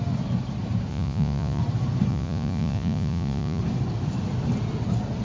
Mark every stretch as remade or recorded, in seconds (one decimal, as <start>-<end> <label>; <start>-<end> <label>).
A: 0.0-0.9 recorded; 0.9-1.6 remade; 1.6-2.1 recorded; 2.1-3.6 remade; 3.6-5.2 recorded